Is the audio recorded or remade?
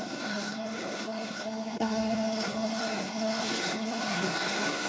remade